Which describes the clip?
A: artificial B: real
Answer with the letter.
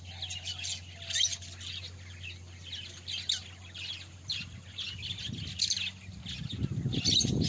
B